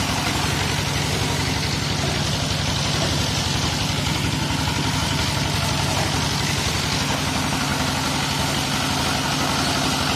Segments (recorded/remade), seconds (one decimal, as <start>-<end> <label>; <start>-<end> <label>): 0.0-10.2 recorded